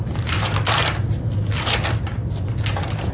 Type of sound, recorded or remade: recorded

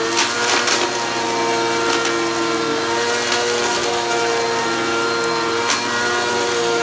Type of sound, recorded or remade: recorded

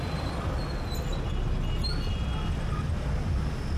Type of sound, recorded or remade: recorded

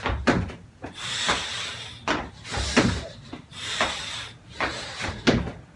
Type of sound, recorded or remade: recorded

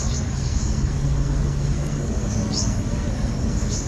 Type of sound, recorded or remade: remade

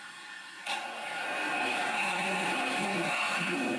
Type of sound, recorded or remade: remade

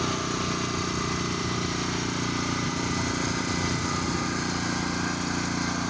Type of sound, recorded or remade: recorded